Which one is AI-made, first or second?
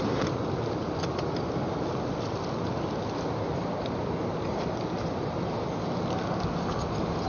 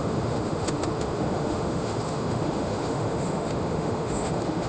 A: second